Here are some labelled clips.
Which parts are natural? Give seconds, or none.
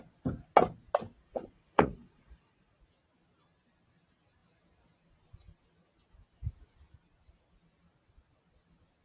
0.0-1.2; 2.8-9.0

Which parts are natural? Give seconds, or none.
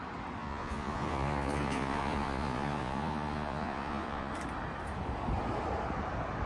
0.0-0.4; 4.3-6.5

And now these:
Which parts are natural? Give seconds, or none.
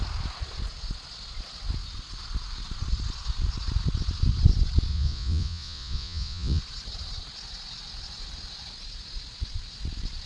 0.0-4.9; 6.6-10.3